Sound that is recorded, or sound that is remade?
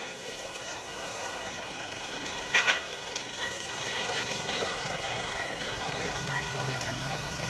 remade